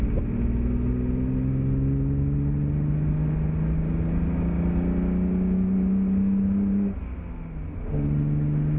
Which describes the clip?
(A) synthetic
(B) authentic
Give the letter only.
B